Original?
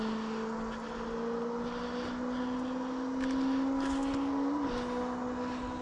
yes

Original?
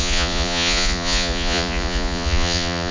no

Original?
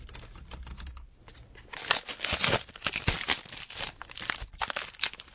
yes